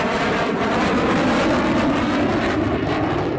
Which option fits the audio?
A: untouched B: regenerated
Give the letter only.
A